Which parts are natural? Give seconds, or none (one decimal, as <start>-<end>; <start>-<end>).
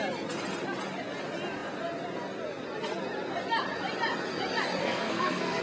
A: 0.0-4.8